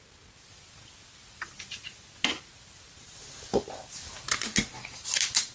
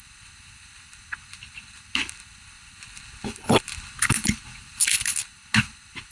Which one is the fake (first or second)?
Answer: second